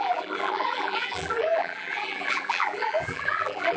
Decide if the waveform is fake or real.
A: fake